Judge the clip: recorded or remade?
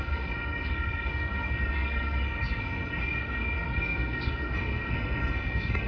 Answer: remade